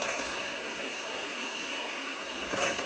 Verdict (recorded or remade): remade